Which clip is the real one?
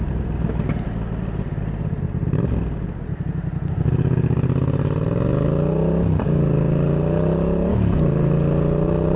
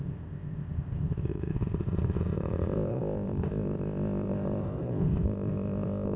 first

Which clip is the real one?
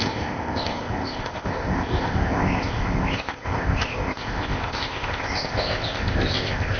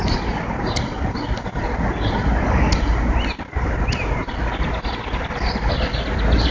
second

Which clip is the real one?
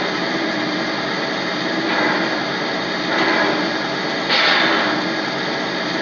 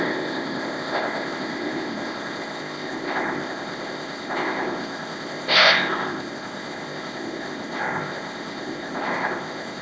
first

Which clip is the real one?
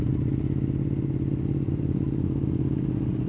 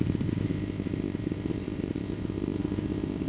first